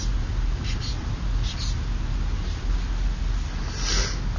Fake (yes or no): no